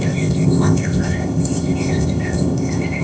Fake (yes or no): yes